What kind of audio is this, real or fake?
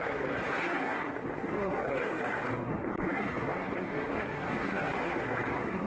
fake